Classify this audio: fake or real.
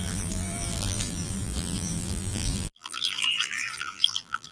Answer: fake